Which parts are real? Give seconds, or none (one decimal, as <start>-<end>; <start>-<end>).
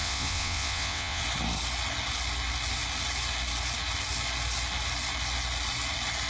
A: 1.2-6.3